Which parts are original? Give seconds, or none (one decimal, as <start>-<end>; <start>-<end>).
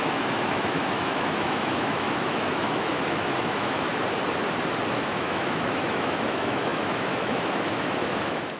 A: 3.9-4.9